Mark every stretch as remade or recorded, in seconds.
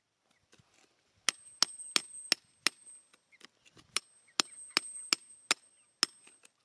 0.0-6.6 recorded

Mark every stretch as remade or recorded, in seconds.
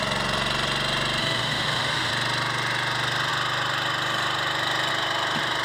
0.0-1.2 recorded; 1.2-2.1 remade; 2.1-5.6 recorded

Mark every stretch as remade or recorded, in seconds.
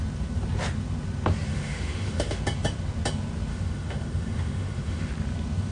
0.0-1.5 recorded; 1.5-2.4 remade; 2.4-3.5 recorded; 3.5-5.1 remade; 5.1-5.7 recorded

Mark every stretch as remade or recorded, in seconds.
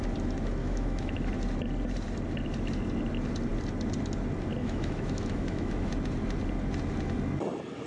0.0-0.6 recorded; 0.6-1.3 remade; 1.3-4.6 recorded; 4.6-5.9 remade; 5.9-7.9 recorded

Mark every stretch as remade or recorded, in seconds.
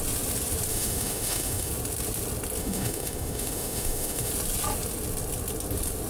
0.0-0.7 recorded; 0.7-1.7 remade; 1.7-2.6 recorded; 2.6-4.3 remade; 4.3-6.1 recorded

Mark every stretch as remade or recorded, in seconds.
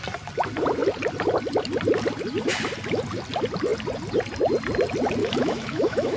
0.0-5.2 recorded; 5.2-6.2 remade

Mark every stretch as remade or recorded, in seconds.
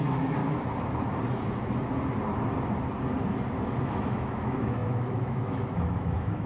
0.0-0.4 remade; 0.4-3.8 recorded; 3.8-6.5 remade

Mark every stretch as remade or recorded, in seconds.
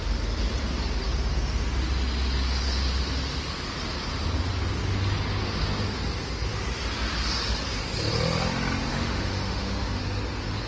0.0-8.9 recorded; 8.9-10.0 remade; 10.0-10.7 recorded